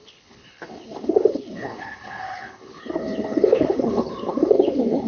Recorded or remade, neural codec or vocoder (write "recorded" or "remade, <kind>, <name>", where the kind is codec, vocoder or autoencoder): remade, codec, HILCodec